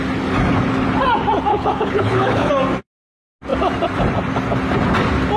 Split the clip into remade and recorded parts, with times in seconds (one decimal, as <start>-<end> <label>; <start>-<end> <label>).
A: 0.0-1.5 recorded; 1.5-2.5 remade; 2.5-5.4 recorded